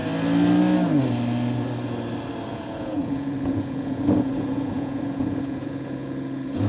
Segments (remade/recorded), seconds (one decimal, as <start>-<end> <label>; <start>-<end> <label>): 0.0-2.5 recorded; 2.5-6.7 remade